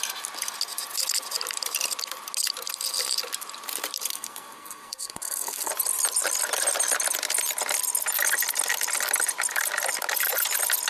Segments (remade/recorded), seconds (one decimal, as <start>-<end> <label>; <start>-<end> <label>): 0.0-4.1 recorded; 4.1-5.7 remade; 5.7-10.9 recorded